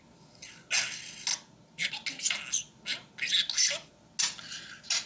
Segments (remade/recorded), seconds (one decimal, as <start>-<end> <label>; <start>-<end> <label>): 0.0-5.1 recorded